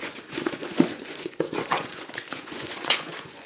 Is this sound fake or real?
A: fake